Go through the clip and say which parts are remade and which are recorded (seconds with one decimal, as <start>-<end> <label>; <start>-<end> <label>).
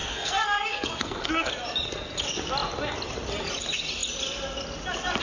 0.0-1.5 remade; 1.5-5.2 recorded